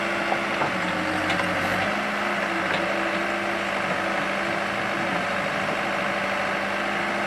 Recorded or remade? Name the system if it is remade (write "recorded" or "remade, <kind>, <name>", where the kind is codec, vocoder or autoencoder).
recorded